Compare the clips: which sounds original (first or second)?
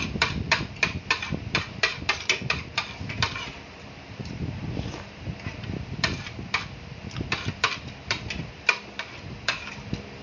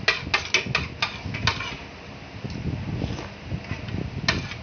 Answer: second